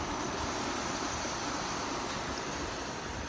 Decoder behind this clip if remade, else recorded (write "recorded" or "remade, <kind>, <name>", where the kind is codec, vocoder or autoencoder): recorded